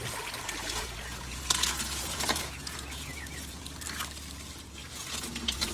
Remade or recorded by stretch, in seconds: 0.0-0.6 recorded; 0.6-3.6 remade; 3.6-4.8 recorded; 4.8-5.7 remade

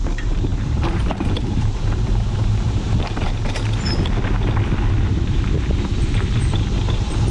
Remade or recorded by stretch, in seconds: 0.0-0.5 recorded; 0.5-3.3 remade; 3.3-5.1 recorded; 5.1-5.7 remade; 5.7-7.3 recorded

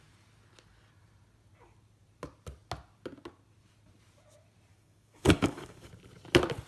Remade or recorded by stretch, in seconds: 0.0-4.7 recorded; 4.7-5.9 remade; 5.9-6.7 recorded

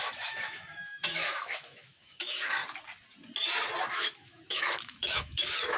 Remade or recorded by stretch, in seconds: 0.0-2.6 remade; 2.6-3.9 recorded; 3.9-5.8 remade